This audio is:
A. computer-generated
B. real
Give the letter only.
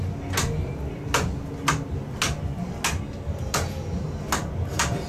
B